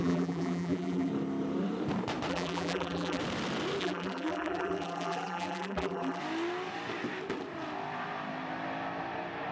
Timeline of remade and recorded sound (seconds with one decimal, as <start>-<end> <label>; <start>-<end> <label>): 0.0-1.1 remade; 1.1-2.3 recorded; 2.3-3.2 remade; 3.2-3.8 recorded; 3.8-6.2 remade; 6.2-9.5 recorded